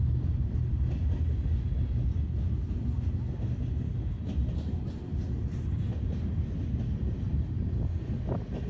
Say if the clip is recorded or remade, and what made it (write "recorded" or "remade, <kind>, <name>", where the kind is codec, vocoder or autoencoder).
recorded